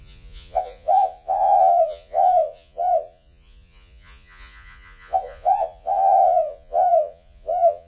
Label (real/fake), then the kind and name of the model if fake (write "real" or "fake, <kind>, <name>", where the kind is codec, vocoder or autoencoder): fake, vocoder, Vocos